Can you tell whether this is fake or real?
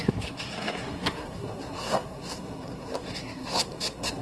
fake